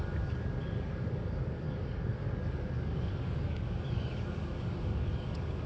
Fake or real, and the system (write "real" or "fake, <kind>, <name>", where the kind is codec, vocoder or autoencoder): fake, codec, DAC